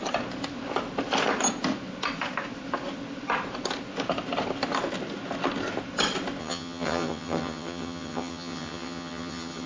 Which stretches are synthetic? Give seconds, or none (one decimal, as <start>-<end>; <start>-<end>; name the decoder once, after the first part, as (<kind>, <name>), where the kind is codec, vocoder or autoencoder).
6.4-9.7 (vocoder, HiFi-GAN)